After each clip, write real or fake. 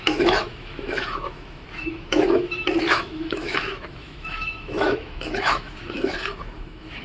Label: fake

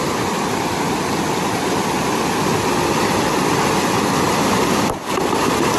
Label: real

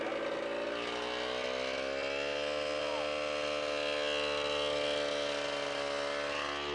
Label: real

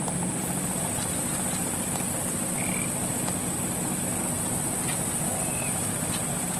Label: real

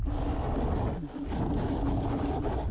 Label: real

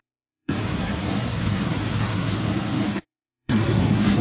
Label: fake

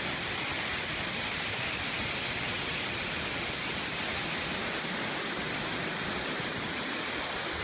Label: fake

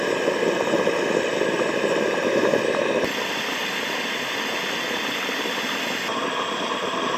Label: real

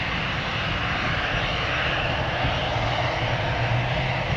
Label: real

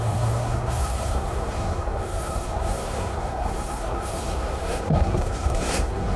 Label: fake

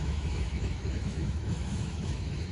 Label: fake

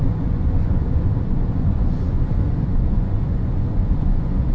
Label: fake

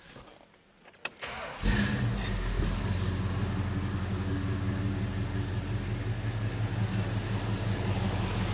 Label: real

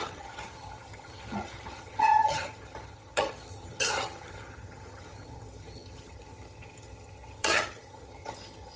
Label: fake